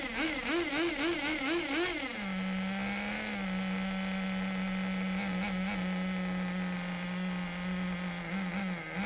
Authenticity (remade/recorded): recorded